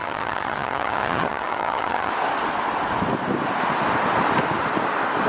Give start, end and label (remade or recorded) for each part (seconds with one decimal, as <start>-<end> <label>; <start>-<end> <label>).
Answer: 0.0-2.1 remade; 2.1-5.3 recorded